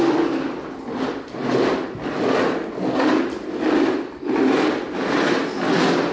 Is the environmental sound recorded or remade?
recorded